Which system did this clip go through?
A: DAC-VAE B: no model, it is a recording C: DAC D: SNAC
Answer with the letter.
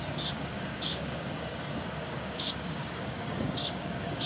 C